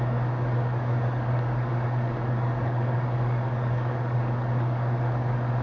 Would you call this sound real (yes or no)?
no